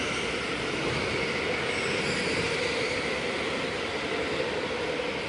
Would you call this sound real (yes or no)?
yes